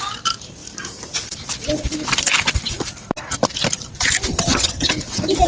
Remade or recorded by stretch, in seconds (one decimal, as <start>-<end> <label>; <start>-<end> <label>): 0.0-4.3 recorded; 4.3-4.9 remade; 4.9-5.5 recorded